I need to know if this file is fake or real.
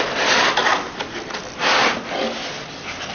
real